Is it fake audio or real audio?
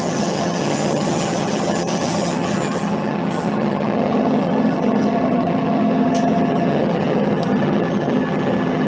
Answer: fake